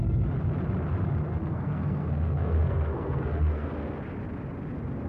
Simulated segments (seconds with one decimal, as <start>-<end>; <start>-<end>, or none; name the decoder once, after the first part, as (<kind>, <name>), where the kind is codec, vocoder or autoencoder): 1.4-3.7 (codec, SNAC)